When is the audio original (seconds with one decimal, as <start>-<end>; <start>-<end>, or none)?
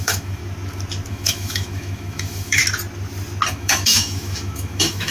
0.4-1.1; 2.6-3.5